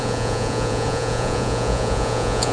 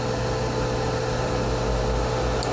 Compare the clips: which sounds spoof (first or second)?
first